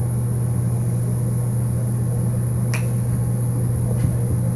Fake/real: real